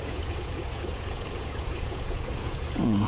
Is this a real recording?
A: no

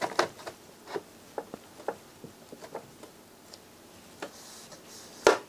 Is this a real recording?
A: yes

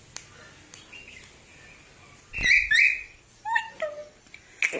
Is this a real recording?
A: yes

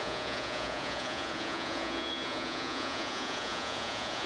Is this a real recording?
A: no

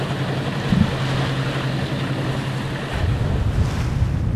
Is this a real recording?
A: yes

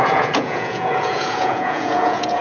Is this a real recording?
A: no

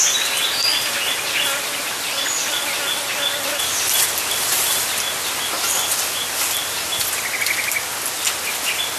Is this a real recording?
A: yes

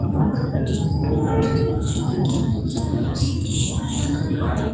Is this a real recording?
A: no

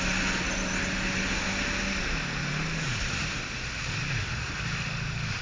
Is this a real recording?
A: yes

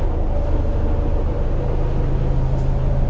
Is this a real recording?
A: yes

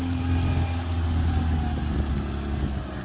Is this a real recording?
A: yes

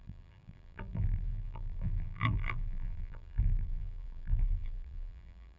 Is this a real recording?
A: no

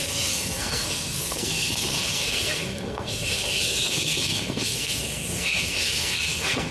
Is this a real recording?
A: no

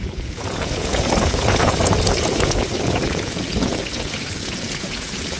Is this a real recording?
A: no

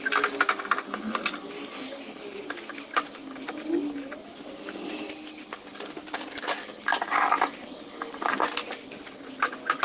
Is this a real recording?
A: yes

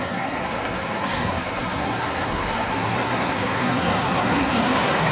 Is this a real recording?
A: no